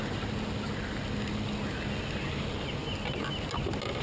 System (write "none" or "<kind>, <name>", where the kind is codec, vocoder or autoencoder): none